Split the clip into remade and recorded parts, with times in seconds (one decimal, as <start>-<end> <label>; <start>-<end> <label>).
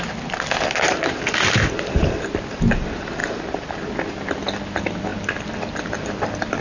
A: 0.0-5.1 recorded; 5.1-6.6 remade